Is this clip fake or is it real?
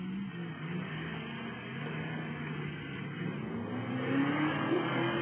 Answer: real